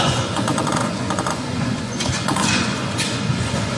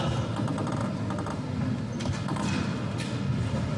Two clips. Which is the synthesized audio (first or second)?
first